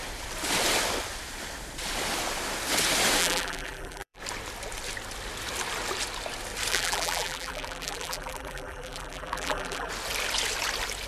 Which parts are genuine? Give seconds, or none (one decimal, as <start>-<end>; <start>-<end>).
0.0-3.2; 4.2-6.7; 9.9-11.1